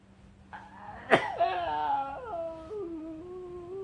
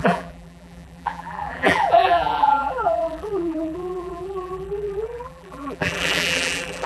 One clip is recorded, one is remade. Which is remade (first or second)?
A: second